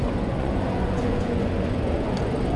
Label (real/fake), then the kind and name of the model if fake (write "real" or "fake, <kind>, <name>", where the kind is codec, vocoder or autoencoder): fake, vocoder, Vocos